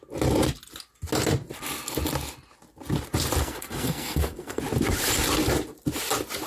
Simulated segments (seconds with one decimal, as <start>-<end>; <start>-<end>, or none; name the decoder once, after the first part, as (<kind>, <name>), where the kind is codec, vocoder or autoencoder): 3.4-4.6 (codec, SNAC)